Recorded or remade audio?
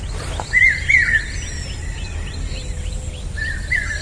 recorded